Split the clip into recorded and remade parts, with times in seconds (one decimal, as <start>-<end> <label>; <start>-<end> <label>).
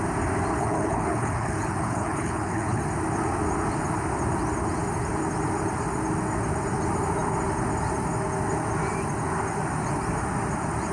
0.0-0.5 recorded; 0.5-2.8 remade; 2.8-10.9 recorded